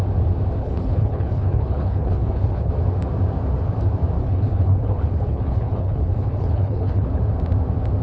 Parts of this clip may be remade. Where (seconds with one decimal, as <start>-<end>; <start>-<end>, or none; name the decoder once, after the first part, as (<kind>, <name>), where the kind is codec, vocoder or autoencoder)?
0.6-2.7 (codec, HILCodec); 4.2-7.2

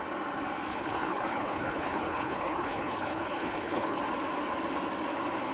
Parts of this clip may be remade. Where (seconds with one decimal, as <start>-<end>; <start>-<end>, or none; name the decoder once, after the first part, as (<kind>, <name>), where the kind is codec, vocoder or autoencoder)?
0.7-4.0 (codec, HILCodec)